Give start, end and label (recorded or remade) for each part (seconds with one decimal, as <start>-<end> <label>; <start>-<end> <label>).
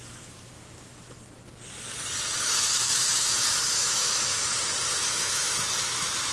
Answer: 0.0-1.2 remade; 1.2-2.4 recorded; 2.4-4.4 remade; 4.4-4.9 recorded; 4.9-6.3 remade